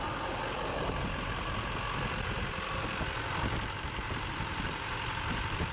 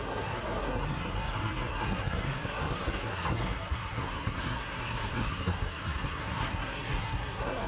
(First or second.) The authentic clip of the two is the first